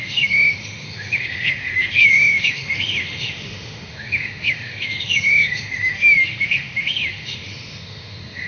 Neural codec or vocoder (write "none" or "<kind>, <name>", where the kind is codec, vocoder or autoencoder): autoencoder, DAC-VAE